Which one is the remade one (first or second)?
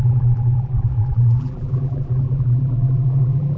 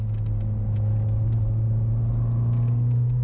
first